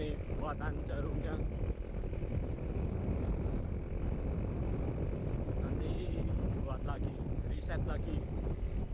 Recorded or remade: recorded